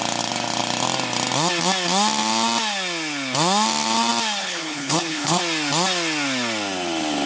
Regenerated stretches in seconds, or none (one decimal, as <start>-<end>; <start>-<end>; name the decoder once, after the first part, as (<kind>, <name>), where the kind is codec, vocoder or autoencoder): 4.4-5.4 (codec, HILCodec)